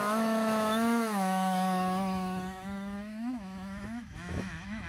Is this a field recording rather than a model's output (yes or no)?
no